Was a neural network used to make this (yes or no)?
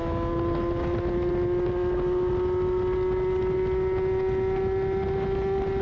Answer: no